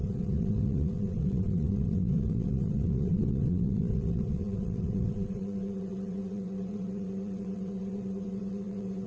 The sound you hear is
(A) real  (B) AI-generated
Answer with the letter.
B